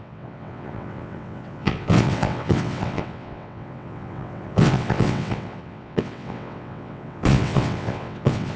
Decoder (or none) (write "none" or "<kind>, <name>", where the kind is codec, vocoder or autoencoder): vocoder, WaveNeXt